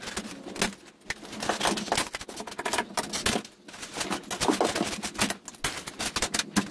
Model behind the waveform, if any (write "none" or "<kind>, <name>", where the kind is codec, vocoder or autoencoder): none